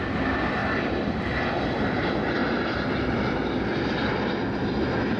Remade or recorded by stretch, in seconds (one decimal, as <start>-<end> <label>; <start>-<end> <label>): 0.0-0.6 recorded; 0.6-1.2 remade; 1.2-2.4 recorded; 2.4-3.8 remade; 3.8-5.2 recorded